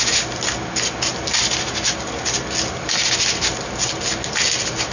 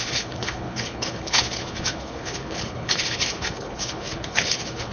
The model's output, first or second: second